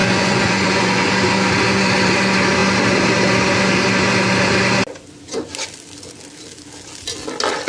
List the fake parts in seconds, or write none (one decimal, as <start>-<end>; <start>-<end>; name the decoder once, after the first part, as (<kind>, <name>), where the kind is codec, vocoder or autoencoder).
0.0-1.1 (vocoder, Vocos)